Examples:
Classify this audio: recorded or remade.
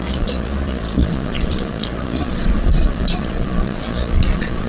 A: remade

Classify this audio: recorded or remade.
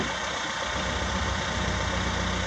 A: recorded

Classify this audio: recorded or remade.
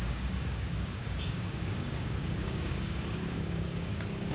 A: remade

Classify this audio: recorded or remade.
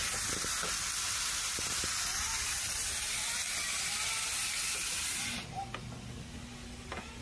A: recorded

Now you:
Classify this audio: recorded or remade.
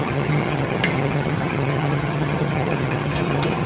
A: remade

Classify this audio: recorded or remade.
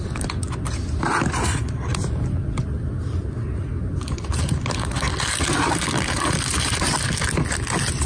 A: recorded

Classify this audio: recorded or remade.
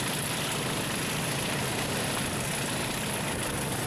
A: recorded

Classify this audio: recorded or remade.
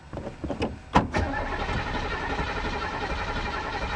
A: recorded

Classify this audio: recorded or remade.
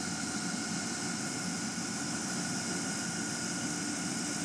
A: recorded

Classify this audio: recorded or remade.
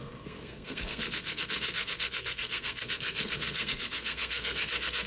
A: remade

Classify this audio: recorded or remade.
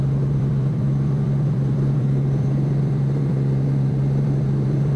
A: remade